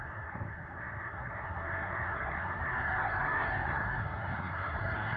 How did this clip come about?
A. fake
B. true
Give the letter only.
A